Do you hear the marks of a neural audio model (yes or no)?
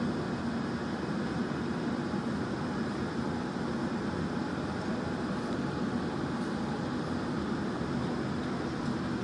no